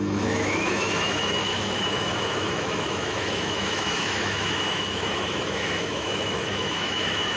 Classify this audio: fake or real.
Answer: fake